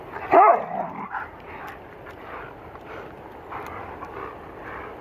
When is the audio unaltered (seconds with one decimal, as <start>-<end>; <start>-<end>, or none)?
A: 0.0-5.0